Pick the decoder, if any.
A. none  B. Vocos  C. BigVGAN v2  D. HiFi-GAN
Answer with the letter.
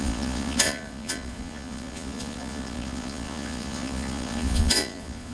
B